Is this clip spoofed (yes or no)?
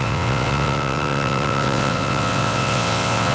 yes